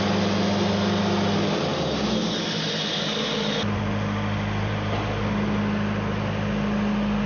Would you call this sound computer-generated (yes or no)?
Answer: no